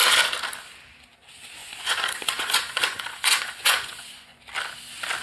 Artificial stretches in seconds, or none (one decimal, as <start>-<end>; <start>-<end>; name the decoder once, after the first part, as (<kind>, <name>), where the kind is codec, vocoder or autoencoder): 1.6-4.4 (vocoder, Vocos)